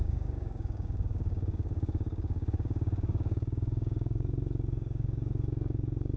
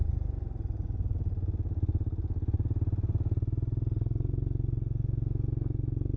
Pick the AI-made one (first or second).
first